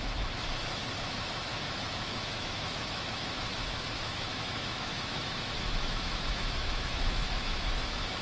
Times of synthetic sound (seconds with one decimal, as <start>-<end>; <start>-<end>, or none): 0.0-8.2